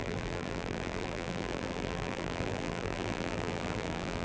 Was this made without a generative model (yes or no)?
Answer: no